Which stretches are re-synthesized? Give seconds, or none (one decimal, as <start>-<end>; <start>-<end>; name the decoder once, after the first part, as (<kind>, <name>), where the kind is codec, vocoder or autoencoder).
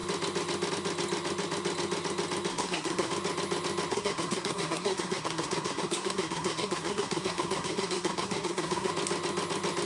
2.5-3.1 (codec, SNAC); 3.9-8.9